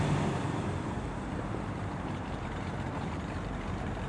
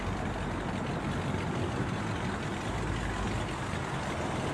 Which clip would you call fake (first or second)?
first